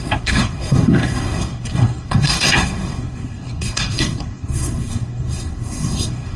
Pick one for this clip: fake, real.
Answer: fake